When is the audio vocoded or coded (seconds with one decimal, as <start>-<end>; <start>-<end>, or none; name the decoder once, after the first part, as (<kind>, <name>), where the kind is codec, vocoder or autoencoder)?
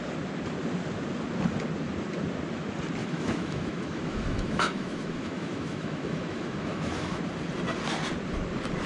3.0-7.2 (autoencoder, DAC-VAE)